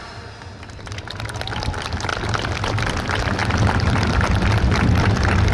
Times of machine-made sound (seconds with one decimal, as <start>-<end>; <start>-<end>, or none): none